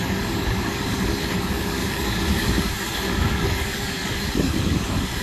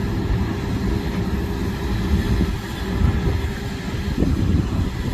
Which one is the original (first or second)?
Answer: second